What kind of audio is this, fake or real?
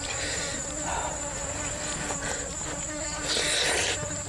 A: real